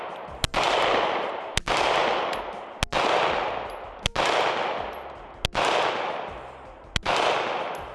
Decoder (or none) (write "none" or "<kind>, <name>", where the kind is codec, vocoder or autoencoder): none